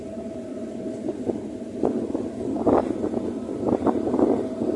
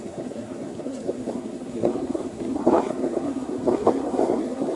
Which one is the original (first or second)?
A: first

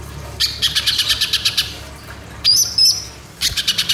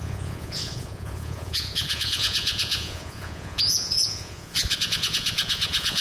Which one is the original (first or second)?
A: first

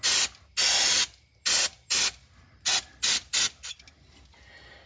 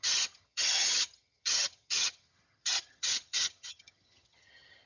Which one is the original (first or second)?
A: first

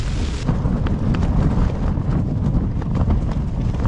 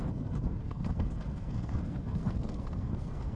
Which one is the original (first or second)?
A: first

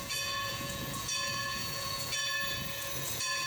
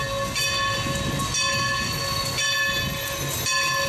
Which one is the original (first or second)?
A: second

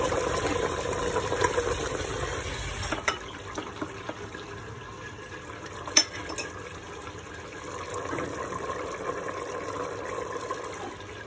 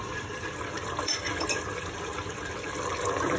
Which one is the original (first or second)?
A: first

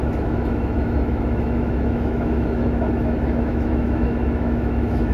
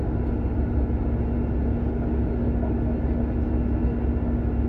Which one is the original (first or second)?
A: second